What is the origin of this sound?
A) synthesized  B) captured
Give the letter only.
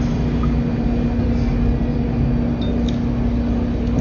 B